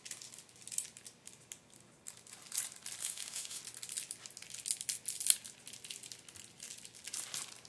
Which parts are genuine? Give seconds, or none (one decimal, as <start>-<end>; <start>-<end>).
0.0-3.0; 3.6-7.7